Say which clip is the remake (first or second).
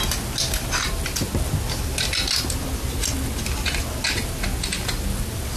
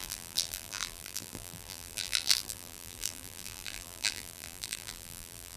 second